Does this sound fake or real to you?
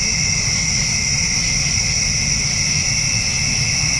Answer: real